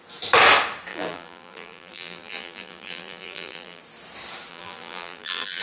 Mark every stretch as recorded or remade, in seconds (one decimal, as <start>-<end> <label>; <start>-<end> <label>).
0.0-0.9 recorded; 0.9-3.8 remade; 3.8-4.5 recorded; 4.5-5.6 remade